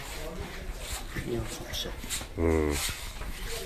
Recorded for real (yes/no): yes